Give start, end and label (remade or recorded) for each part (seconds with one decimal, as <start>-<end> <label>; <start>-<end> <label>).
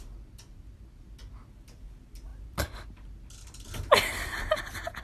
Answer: 0.0-5.0 recorded